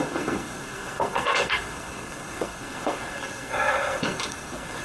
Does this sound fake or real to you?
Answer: fake